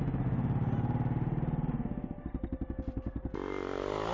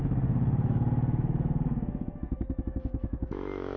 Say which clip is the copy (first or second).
second